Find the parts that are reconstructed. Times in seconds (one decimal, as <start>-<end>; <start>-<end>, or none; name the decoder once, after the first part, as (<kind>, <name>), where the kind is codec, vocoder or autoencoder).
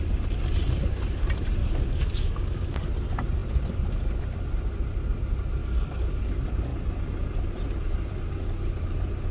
1.6-2.7 (codec, DAC); 5.6-6.2